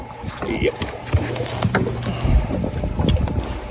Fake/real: real